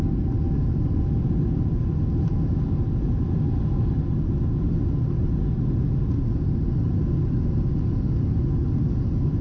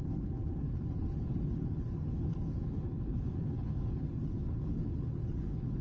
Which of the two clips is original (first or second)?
first